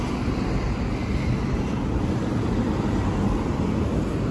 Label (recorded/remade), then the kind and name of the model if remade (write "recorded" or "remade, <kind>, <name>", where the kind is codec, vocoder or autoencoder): remade, vocoder, BigVGAN v2